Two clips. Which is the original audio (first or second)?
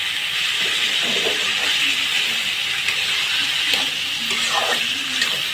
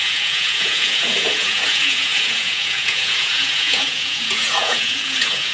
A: first